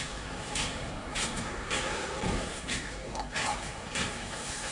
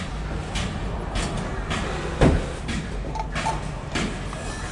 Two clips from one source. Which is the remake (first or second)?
first